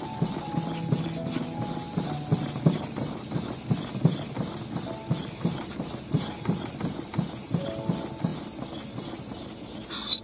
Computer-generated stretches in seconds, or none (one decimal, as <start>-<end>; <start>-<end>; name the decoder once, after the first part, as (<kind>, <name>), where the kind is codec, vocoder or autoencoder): none